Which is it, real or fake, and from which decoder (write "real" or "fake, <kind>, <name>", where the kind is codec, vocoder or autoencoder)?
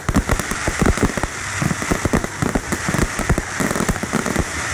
real